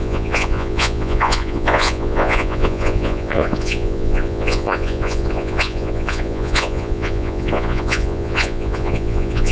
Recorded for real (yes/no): no